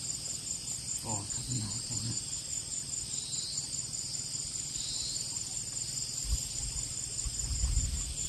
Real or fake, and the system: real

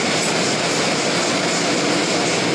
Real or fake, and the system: real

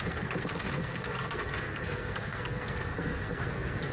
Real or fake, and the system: fake, codec, SNAC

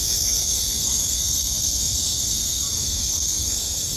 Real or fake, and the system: fake, codec, SNAC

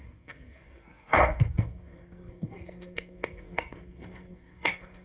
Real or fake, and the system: fake, codec, SNAC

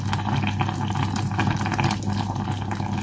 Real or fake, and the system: real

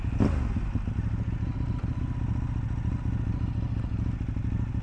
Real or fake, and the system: real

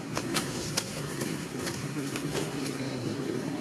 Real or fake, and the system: fake, codec, SNAC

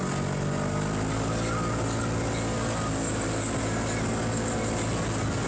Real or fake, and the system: real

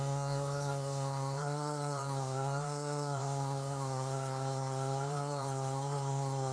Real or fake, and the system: fake, codec, SNAC